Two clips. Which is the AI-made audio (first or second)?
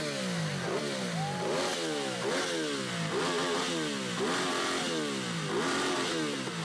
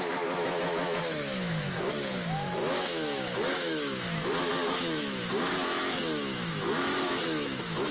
second